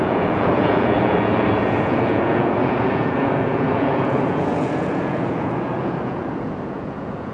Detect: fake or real fake